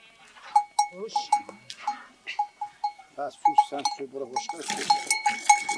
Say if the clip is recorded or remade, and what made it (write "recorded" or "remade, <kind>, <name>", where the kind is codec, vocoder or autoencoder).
recorded